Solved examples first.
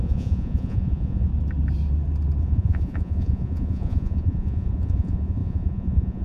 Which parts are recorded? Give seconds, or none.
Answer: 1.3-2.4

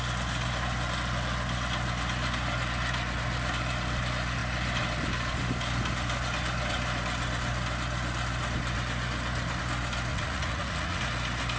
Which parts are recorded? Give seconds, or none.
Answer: 0.0-10.1; 11.0-11.6

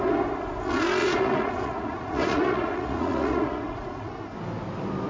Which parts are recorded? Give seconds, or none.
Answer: 0.0-1.0; 4.1-5.1

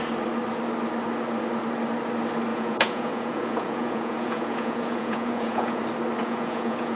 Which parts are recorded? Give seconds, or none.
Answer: 0.0-2.5; 5.8-6.2

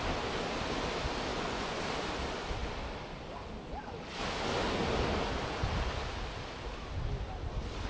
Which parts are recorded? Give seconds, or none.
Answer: 0.0-1.3; 1.8-7.9

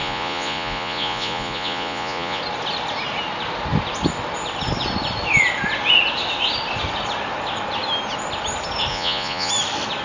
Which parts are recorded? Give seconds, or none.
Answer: 2.4-8.9; 9.5-10.0

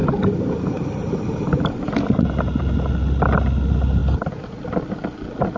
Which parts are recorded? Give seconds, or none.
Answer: 0.0-5.6

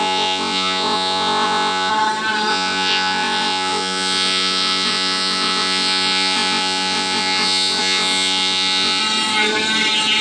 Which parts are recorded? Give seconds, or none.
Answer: 1.9-2.5; 9.0-10.2